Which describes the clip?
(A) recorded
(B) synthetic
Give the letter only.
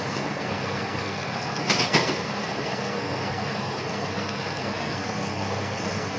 B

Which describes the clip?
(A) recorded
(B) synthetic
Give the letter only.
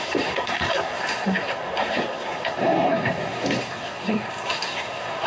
B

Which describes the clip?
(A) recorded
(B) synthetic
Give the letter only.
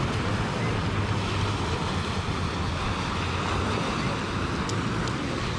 A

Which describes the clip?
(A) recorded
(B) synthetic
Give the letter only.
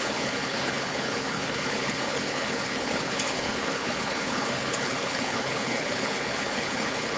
B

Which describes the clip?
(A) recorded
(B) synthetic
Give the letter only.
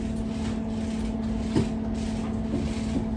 A